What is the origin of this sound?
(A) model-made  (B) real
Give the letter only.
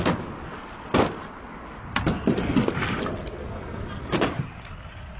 B